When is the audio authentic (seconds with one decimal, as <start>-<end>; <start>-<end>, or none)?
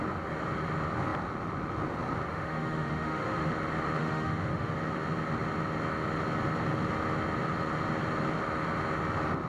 0.0-2.3; 3.5-4.0; 4.7-9.5